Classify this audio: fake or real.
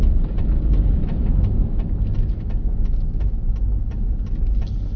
real